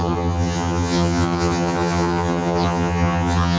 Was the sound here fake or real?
fake